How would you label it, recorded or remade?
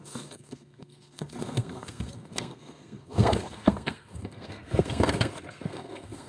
remade